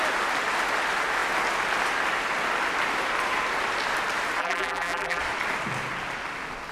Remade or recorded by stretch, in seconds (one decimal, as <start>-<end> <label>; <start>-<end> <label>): 0.0-4.4 recorded; 4.4-5.2 remade; 5.2-6.7 recorded